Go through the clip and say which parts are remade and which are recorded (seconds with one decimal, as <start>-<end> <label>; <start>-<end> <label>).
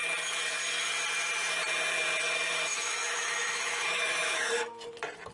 0.0-2.7 recorded; 2.7-4.5 remade; 4.5-5.3 recorded